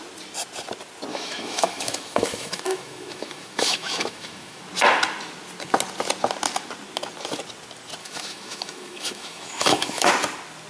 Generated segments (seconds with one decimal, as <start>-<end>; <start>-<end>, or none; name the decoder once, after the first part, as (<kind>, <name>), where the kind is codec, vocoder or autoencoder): 1.1-4.6 (autoencoder, DAC-VAE); 8.0-10.1